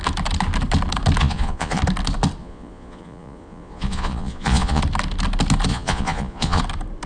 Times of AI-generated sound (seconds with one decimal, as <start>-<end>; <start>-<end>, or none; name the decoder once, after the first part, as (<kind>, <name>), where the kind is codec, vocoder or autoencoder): 1.2-1.8 (vocoder, Vocos); 2.4-4.8; 5.7-6.6